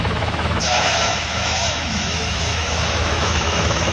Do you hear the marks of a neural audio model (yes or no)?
yes